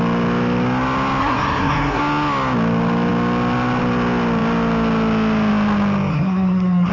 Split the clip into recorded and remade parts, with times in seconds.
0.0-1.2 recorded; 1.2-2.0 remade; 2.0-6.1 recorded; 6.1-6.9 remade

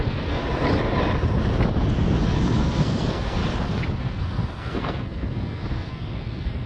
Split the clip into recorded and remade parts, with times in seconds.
0.0-0.4 remade; 0.4-2.6 recorded; 2.6-3.4 remade; 3.4-4.0 recorded; 4.0-6.7 remade

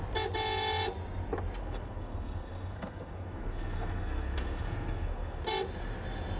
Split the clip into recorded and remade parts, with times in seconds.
0.0-1.6 recorded; 1.6-5.4 remade; 5.4-6.4 recorded

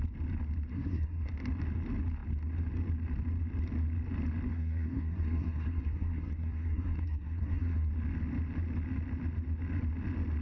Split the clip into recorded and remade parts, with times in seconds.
0.0-0.7 recorded; 0.7-1.3 remade; 1.3-4.5 recorded; 4.5-7.9 remade; 7.9-10.4 recorded

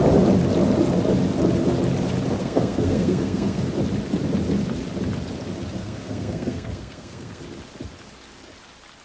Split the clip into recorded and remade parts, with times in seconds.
0.0-2.4 recorded; 2.4-3.7 remade; 3.7-5.8 recorded; 5.8-7.4 remade; 7.4-9.0 recorded

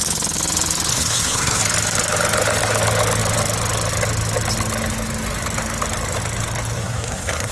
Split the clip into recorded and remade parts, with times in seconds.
0.0-0.9 recorded; 0.9-1.6 remade; 1.6-6.8 recorded; 6.8-7.5 remade

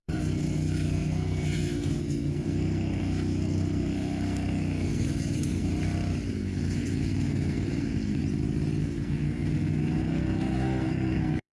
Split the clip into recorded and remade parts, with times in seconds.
0.0-5.7 remade; 5.7-6.3 recorded; 6.3-8.2 remade; 8.2-8.8 recorded; 8.8-11.5 remade